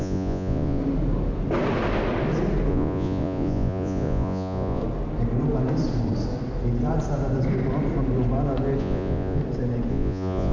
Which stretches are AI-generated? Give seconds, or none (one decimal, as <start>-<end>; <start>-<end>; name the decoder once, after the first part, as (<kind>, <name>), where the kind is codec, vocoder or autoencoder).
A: 0.0-0.8 (vocoder, Vocos); 2.7-4.8; 8.8-9.4; 9.9-10.5